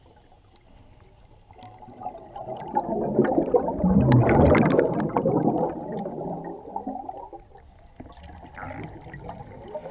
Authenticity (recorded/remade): recorded